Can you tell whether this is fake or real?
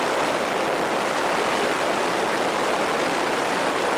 real